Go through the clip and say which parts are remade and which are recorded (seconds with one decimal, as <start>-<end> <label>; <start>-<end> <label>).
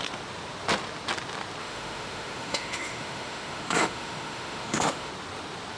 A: 0.0-1.6 recorded; 1.6-5.1 remade; 5.1-5.8 recorded